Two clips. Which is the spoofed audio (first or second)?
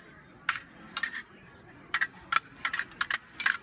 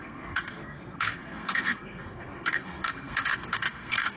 second